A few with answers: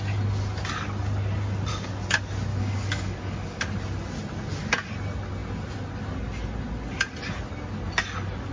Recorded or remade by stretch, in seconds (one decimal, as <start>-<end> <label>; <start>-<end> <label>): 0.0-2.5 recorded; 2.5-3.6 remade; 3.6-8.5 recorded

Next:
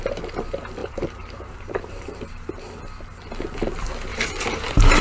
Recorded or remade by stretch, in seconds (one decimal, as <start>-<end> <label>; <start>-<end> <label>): 0.0-0.8 recorded; 0.8-2.6 remade; 2.6-4.1 recorded; 4.1-5.0 remade

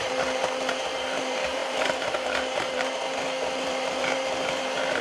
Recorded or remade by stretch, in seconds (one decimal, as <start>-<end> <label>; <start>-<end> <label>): 0.0-0.4 remade; 0.4-1.0 recorded; 1.0-5.0 remade

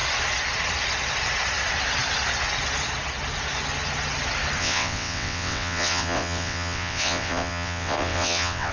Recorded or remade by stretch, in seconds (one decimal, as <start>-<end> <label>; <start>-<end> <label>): 0.0-4.6 recorded; 4.6-8.7 remade

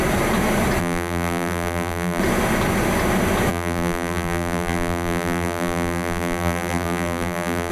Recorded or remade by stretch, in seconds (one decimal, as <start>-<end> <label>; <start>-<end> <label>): 0.0-0.8 recorded; 0.8-2.2 remade; 2.2-3.5 recorded; 3.5-7.7 remade